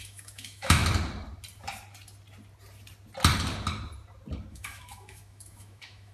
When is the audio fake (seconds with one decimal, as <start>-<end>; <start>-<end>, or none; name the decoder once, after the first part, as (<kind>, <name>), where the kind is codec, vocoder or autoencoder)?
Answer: 0.0-0.8 (autoencoder, DAC-VAE); 4.5-6.1